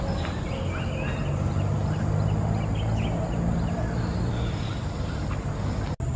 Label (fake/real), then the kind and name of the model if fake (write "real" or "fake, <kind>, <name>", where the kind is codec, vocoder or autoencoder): real